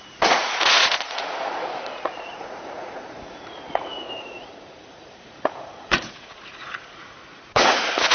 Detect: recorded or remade remade